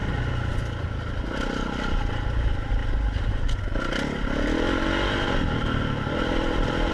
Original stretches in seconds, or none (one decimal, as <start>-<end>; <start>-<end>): 0.0-6.9